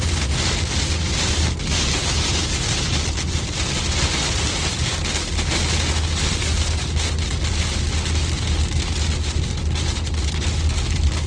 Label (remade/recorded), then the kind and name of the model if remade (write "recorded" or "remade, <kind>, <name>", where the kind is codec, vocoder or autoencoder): recorded